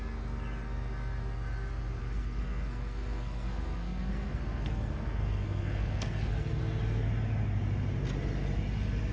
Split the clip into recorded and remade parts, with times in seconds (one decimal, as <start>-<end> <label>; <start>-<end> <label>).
0.0-2.0 recorded; 2.0-6.6 remade; 6.6-9.1 recorded